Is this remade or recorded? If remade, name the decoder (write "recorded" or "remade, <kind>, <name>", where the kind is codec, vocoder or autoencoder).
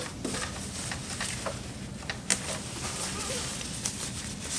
recorded